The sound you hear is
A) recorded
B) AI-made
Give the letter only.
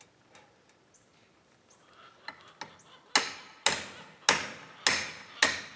A